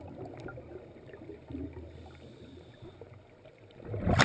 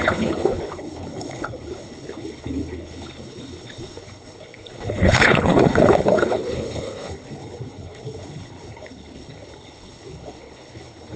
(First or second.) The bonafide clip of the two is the first